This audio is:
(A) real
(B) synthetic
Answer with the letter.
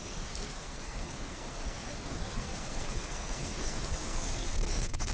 B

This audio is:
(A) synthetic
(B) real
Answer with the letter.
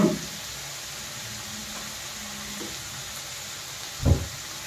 B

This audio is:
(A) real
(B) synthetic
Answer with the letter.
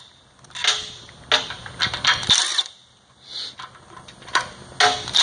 A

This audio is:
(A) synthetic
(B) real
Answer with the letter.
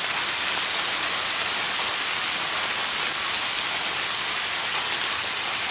B